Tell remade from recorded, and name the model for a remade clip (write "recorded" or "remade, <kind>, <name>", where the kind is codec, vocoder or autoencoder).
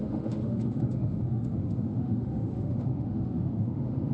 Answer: remade, autoencoder, DAC-VAE